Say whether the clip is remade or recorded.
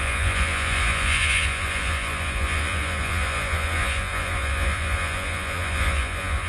remade